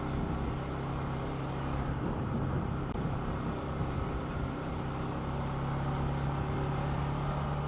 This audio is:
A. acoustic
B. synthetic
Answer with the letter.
A